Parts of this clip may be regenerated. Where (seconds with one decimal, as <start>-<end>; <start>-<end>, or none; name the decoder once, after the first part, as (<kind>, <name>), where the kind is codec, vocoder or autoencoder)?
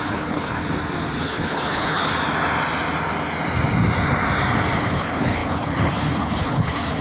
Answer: 0.0-0.6 (codec, HILCodec); 1.2-2.1; 4.8-7.0